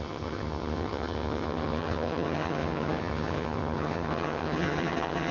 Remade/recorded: remade